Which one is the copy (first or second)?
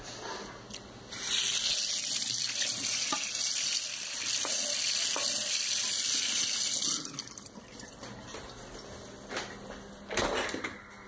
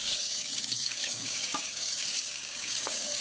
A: second